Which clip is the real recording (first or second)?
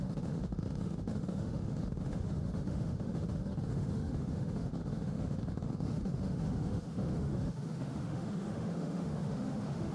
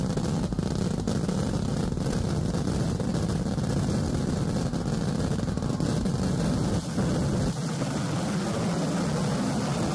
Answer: second